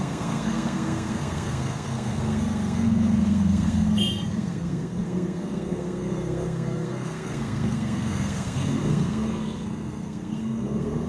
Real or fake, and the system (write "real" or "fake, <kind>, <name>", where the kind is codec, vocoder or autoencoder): fake, codec, SNAC